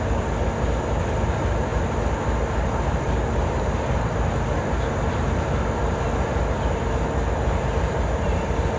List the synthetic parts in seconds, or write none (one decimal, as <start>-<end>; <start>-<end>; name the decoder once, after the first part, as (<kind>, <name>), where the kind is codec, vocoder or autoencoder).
none